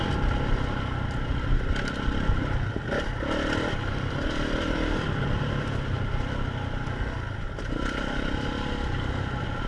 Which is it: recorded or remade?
recorded